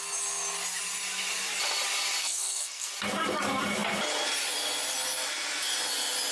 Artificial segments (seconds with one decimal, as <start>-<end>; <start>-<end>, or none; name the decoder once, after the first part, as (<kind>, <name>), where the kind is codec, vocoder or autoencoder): 2.2-2.9 (codec, SNAC)